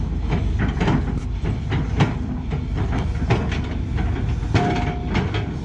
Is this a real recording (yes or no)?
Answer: yes